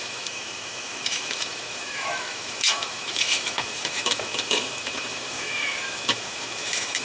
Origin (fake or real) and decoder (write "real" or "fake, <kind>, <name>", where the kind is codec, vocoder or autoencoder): fake, autoencoder, DAC-VAE